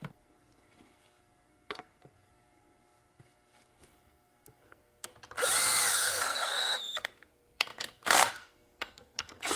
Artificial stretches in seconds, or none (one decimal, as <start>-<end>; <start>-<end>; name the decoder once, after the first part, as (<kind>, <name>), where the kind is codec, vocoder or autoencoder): 0.0-5.1 (codec, SNAC); 5.9-9.6